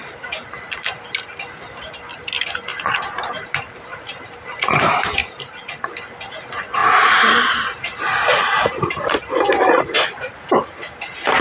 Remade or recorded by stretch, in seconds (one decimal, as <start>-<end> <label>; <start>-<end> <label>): 0.0-2.7 recorded; 2.7-4.8 remade; 4.8-5.2 recorded; 5.2-5.9 remade; 5.9-6.8 recorded; 6.8-9.9 remade; 9.9-11.4 recorded